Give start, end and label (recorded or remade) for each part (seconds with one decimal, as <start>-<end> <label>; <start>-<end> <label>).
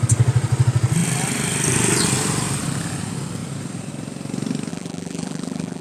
0.0-4.7 recorded; 4.7-5.8 remade